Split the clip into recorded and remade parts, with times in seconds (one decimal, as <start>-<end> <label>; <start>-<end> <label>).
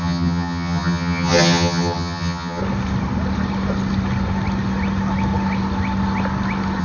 0.0-2.6 remade; 2.6-6.8 recorded